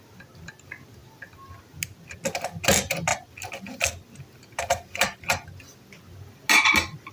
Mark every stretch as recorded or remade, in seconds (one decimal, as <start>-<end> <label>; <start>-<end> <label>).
0.0-7.1 recorded